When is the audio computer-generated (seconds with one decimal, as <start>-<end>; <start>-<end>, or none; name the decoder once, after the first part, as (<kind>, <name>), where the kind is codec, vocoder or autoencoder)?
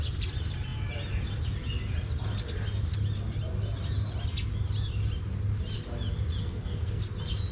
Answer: 6.4-7.0 (codec, SNAC)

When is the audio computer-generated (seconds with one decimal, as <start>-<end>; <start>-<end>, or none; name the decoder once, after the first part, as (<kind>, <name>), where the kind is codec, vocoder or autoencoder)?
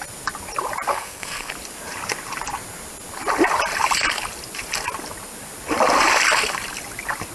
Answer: 0.9-1.5 (codec, SNAC)